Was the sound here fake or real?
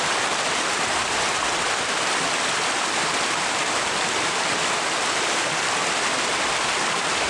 real